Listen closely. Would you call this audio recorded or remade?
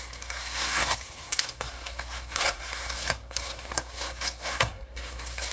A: remade